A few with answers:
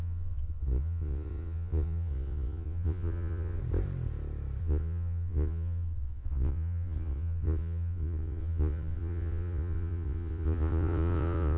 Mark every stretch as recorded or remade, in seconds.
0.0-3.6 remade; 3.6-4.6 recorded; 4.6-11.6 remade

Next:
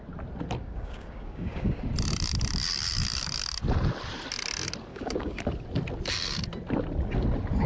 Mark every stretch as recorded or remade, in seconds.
0.0-0.6 recorded; 0.6-1.8 remade; 1.8-4.9 recorded; 4.9-5.4 remade; 5.4-7.7 recorded

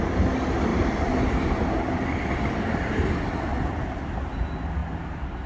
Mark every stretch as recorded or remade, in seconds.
0.0-5.5 recorded

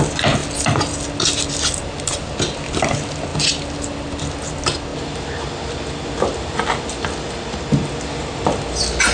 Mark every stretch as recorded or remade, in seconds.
0.0-9.1 recorded

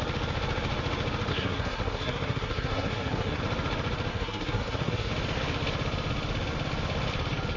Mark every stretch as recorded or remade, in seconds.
0.0-1.3 recorded; 1.3-3.4 remade; 3.4-4.1 recorded; 4.1-5.1 remade; 5.1-7.6 recorded